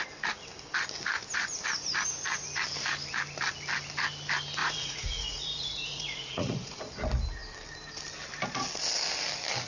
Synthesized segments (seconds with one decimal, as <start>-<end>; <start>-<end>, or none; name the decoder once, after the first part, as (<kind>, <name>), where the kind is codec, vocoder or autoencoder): 4.6-6.8 (vocoder, Vocos)